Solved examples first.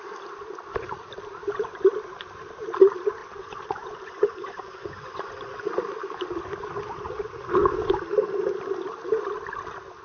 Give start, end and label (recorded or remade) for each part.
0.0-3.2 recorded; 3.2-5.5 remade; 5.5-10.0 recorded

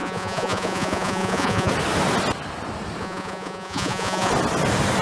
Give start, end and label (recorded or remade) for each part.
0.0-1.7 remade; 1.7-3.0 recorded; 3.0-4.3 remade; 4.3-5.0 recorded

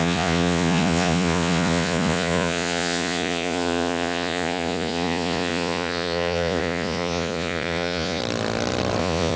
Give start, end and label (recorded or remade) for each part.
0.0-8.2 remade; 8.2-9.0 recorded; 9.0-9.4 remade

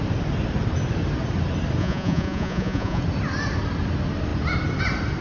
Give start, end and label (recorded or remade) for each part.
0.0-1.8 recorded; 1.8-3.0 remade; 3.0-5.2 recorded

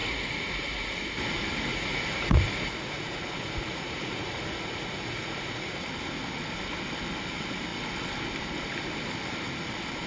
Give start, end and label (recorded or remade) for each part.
0.0-1.0 remade; 1.0-1.7 recorded; 1.7-5.8 remade; 5.8-10.1 recorded

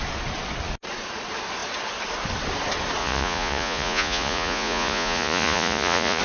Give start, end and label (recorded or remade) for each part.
0.0-3.0 recorded; 3.0-6.2 remade